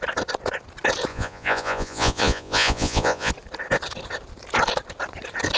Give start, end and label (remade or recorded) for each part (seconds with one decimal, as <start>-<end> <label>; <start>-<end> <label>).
0.0-1.1 recorded; 1.1-3.3 remade; 3.3-5.6 recorded